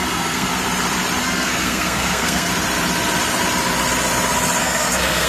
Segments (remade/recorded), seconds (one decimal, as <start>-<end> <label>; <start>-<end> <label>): 0.0-0.5 remade; 0.5-1.2 recorded; 1.2-2.5 remade; 2.5-4.6 recorded; 4.6-5.3 remade